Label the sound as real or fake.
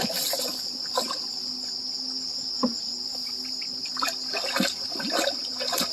real